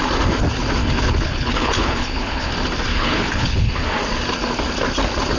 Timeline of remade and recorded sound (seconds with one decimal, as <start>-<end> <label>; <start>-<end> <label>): 0.0-0.8 recorded; 0.8-2.5 remade; 2.5-2.9 recorded; 2.9-3.7 remade; 3.7-5.4 recorded